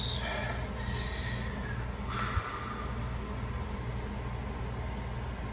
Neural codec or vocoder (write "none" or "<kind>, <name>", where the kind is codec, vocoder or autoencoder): none